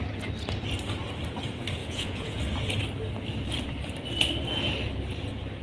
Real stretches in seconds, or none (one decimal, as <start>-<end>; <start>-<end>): 0.0-1.8; 2.4-5.6